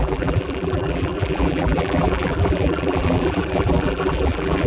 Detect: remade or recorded remade